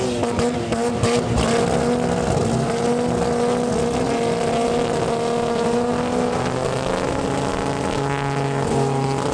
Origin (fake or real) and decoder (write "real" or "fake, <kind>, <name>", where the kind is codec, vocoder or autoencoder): real